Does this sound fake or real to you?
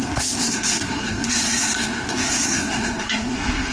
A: fake